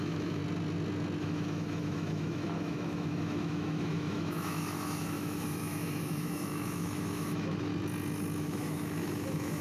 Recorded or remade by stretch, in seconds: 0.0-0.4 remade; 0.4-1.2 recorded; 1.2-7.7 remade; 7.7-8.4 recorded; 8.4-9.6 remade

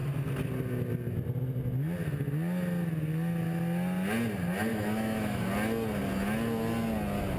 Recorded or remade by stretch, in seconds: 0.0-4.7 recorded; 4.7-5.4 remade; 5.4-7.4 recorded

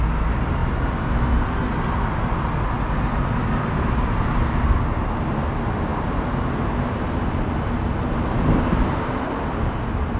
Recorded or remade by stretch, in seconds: 0.0-10.2 recorded

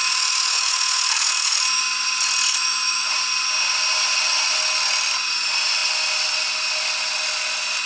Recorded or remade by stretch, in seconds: 0.0-1.8 remade; 1.8-2.5 recorded; 2.5-3.1 remade; 3.1-7.9 recorded